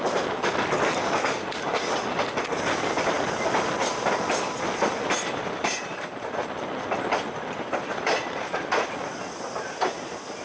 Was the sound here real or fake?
real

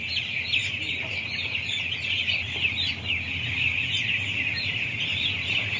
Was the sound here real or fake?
real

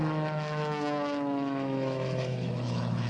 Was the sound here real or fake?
fake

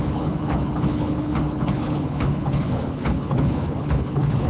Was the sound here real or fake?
fake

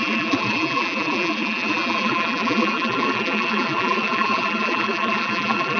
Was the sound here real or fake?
fake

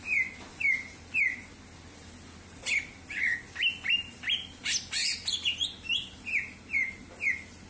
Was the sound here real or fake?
real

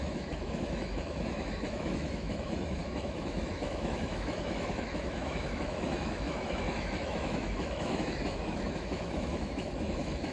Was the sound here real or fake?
fake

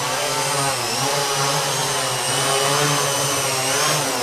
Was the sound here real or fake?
real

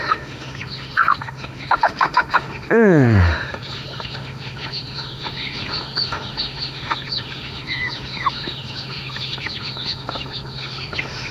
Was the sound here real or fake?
fake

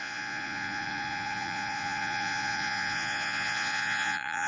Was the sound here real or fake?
fake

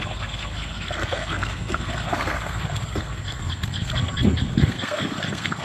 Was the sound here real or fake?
fake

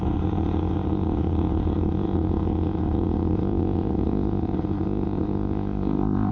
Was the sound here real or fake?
fake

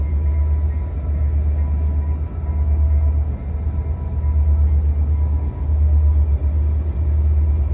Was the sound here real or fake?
real